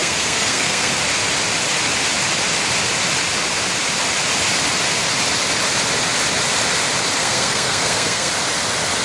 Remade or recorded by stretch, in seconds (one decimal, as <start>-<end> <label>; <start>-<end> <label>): 0.0-0.9 remade; 0.9-7.2 recorded; 7.2-8.3 remade; 8.3-9.0 recorded